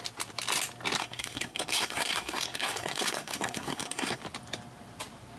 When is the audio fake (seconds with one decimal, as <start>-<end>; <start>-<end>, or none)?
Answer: 1.0-4.2